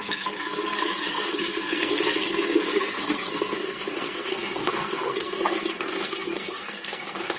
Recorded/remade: remade